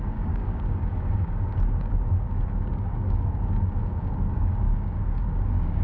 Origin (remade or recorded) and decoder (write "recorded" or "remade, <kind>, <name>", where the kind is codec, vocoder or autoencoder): remade, codec, DAC